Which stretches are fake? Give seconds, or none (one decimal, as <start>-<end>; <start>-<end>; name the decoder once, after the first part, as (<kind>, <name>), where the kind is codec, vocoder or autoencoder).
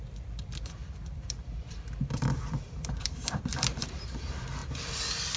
0.0-4.6 (vocoder, BigVGAN v2)